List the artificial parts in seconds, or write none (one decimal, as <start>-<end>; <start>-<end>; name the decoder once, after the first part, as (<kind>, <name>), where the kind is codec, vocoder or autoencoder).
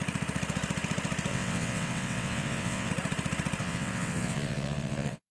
1.3-2.9 (vocoder, WaveNeXt); 3.6-5.3